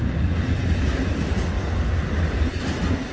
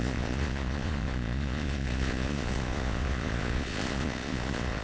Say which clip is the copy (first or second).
second